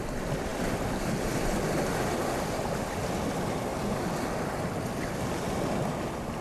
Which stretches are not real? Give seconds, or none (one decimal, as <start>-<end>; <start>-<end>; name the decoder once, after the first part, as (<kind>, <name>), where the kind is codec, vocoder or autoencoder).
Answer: none